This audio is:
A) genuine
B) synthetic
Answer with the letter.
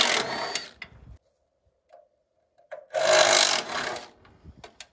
A